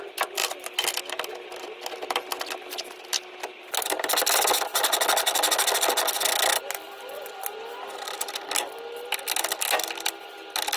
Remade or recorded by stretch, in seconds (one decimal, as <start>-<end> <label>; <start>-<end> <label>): 0.0-10.8 recorded